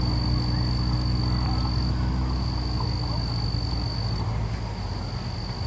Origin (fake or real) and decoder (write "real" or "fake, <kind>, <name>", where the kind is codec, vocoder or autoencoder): real